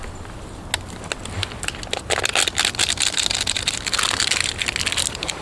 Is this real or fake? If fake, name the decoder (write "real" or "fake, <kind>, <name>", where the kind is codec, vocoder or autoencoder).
real